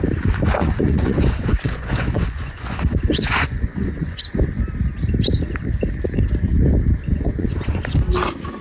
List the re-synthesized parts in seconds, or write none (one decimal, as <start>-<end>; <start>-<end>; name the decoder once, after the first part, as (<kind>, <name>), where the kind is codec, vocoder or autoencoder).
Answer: 0.6-4.2 (vocoder, Vocos); 7.1-7.8

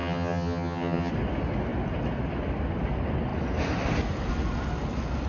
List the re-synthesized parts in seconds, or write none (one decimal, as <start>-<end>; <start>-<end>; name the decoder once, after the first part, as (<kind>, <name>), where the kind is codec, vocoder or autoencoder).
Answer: 0.0-1.1 (vocoder, HiFi-GAN)